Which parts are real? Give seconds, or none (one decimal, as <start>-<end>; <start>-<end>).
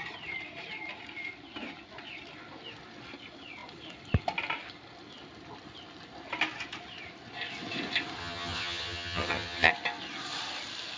0.0-8.2; 9.7-11.0